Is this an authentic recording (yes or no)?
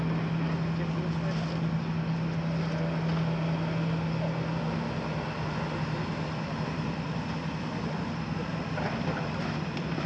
yes